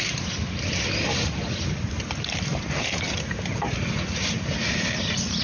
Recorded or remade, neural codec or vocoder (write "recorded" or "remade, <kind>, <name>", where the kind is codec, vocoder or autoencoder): recorded